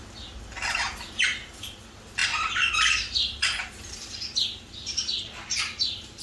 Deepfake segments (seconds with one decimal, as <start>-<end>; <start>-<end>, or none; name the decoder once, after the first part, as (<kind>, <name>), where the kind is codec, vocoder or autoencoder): 1.2-6.2 (vocoder, BigVGAN v2)